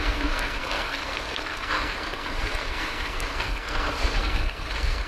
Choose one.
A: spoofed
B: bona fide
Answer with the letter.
A